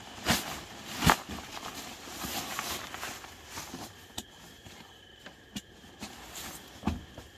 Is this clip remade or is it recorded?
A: recorded